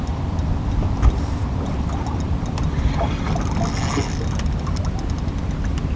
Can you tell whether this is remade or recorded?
recorded